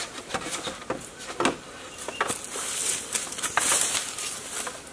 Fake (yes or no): no